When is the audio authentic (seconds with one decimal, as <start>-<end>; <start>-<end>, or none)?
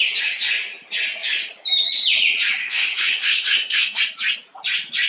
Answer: 0.0-2.6; 4.0-5.1